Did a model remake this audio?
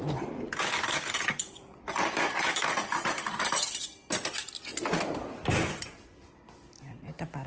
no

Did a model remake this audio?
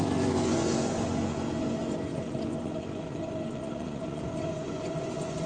yes